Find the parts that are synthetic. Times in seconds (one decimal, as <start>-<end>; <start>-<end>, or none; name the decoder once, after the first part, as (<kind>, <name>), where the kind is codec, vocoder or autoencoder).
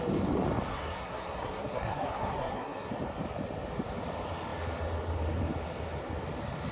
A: 0.7-2.9 (codec, SNAC)